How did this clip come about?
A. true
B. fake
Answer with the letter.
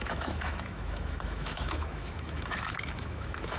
B